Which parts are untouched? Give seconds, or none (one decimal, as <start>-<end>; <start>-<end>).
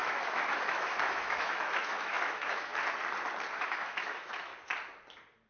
2.7-3.6; 4.5-5.5